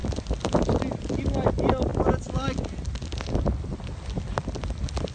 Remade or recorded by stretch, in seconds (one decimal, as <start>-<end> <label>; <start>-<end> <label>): 0.0-5.1 recorded